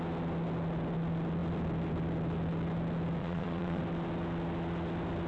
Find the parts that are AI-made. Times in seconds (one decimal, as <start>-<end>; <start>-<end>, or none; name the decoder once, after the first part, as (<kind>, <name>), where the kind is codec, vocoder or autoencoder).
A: 3.2-3.8 (vocoder, Vocos)